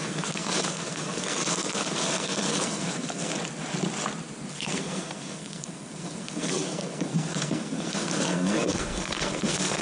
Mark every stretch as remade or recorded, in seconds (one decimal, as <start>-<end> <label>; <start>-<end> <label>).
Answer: 0.0-3.3 remade; 3.3-4.5 recorded; 4.5-9.8 remade